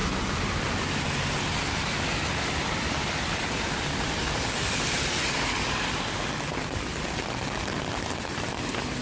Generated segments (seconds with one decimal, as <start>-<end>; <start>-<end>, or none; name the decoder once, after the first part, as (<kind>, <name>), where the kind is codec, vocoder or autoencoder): none